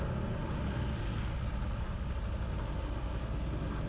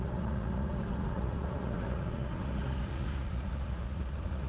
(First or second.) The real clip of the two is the first